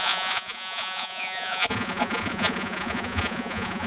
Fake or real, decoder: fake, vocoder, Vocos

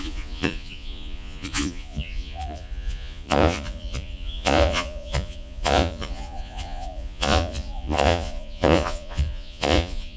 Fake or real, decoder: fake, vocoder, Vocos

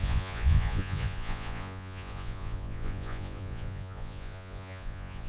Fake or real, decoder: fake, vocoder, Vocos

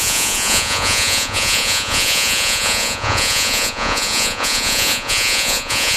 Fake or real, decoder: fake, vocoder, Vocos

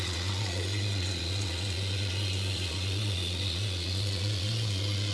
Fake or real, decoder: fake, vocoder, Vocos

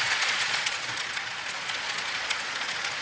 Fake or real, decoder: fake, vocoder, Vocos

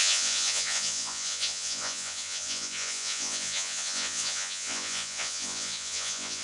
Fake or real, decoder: fake, vocoder, Vocos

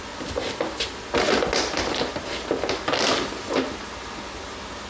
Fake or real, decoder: real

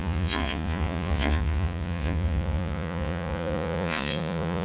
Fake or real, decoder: fake, vocoder, Vocos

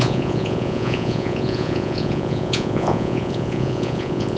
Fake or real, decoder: fake, vocoder, Vocos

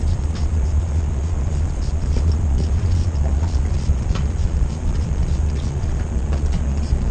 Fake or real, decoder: fake, vocoder, Vocos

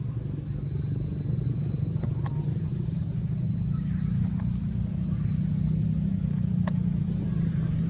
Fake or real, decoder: real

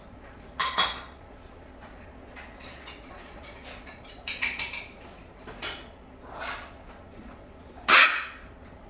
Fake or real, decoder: fake, vocoder, Vocos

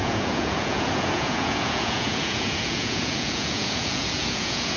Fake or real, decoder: fake, vocoder, Vocos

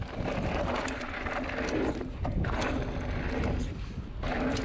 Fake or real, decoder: real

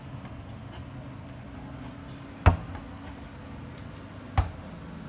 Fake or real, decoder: real